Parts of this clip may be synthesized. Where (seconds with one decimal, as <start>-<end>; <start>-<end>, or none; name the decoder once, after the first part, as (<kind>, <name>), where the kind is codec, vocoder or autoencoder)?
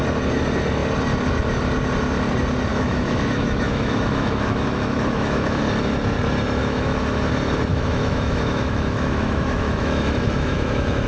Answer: 2.7-5.6 (autoencoder, DAC-VAE); 6.6-7.3; 7.7-11.1